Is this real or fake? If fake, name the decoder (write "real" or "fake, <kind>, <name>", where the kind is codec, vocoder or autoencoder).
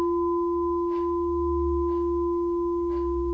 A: real